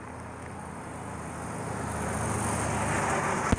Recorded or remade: recorded